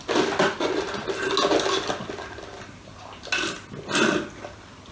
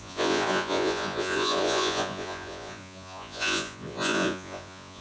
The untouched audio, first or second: first